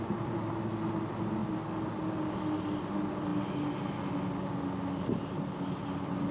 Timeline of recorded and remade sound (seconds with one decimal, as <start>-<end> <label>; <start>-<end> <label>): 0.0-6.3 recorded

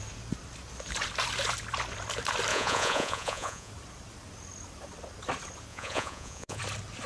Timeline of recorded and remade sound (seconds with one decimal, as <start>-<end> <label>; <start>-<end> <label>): 0.0-2.5 recorded; 2.5-3.7 remade; 3.7-5.7 recorded; 5.7-6.6 remade; 6.6-7.1 recorded

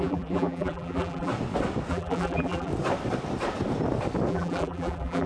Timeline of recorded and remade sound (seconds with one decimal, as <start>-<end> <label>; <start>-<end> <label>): 0.0-1.3 remade; 1.3-1.9 recorded; 1.9-2.7 remade; 2.7-4.3 recorded; 4.3-5.3 remade

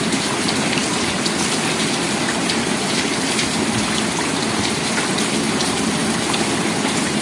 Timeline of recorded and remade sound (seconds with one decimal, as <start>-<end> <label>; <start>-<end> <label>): 0.0-7.2 recorded

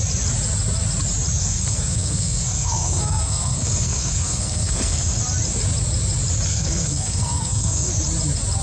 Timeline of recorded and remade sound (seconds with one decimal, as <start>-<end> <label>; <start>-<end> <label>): 0.0-1.4 recorded; 1.4-5.2 remade; 5.2-6.5 recorded; 6.5-7.9 remade; 7.9-8.6 recorded

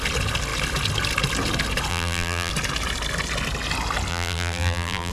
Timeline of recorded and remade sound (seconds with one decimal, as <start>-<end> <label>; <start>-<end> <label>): 0.0-1.9 recorded; 1.9-2.5 remade; 2.5-4.1 recorded; 4.1-5.1 remade

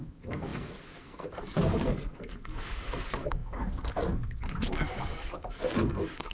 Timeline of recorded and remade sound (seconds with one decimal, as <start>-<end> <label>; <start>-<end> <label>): 0.0-6.3 remade

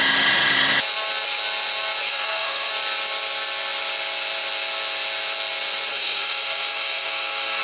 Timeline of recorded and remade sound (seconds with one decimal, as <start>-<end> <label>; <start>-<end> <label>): 0.0-2.1 recorded; 2.1-2.7 remade; 2.7-5.9 recorded; 5.9-7.6 remade